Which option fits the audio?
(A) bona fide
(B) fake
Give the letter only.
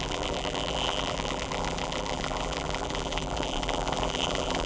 B